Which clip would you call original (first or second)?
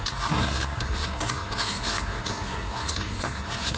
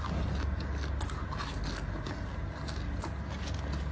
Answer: second